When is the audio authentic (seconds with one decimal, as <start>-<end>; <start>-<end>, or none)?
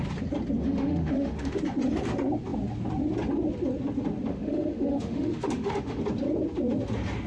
0.0-0.6; 1.6-4.3; 6.0-7.3